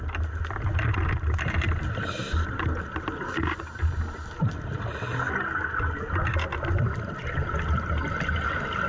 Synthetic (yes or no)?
no